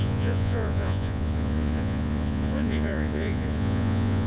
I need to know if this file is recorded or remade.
remade